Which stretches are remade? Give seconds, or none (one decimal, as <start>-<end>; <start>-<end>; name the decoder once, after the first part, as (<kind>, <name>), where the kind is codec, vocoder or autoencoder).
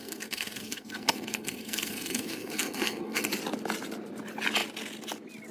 0.0-3.3 (codec, SNAC)